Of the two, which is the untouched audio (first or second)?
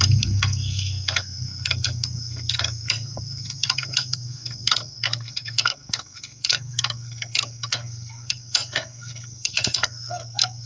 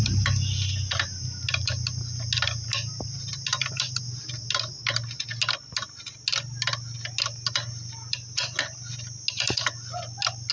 second